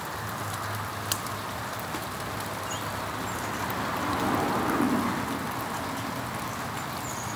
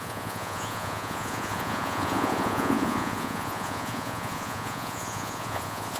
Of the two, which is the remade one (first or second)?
second